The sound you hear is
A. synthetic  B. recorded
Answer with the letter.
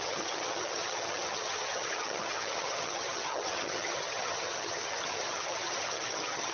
A